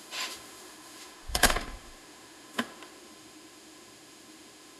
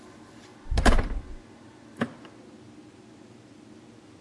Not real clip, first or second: first